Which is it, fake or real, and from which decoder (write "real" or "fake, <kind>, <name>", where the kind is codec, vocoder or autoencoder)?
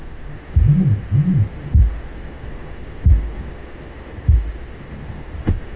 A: fake, autoencoder, DAC-VAE